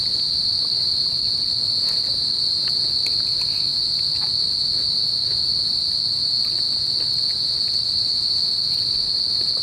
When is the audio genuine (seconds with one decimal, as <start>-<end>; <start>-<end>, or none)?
0.0-9.6